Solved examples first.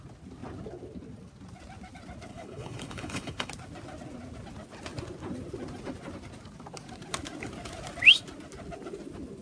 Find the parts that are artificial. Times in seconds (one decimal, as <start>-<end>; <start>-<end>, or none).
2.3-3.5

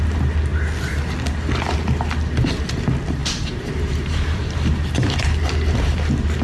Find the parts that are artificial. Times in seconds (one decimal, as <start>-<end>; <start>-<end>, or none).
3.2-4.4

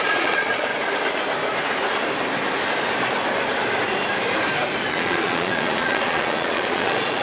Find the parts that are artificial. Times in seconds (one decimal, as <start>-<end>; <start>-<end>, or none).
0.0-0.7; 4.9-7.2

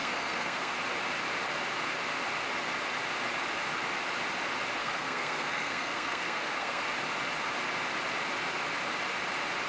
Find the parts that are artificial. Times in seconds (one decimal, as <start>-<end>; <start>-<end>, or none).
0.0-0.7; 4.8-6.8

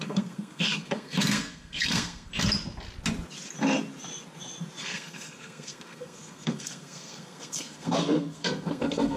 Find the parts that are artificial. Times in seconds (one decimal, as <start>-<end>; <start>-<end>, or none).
0.0-2.3; 4.8-9.2

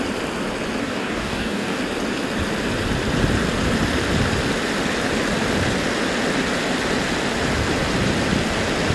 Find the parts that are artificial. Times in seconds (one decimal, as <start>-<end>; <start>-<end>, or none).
0.8-1.8

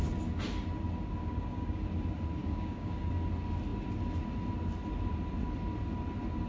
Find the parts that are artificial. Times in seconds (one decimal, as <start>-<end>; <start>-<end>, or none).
1.2-1.8; 2.4-3.1